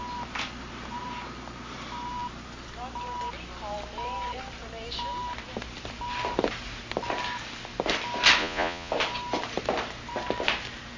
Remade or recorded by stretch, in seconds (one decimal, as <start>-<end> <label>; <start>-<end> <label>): 0.0-8.4 recorded; 8.4-8.9 remade; 8.9-11.0 recorded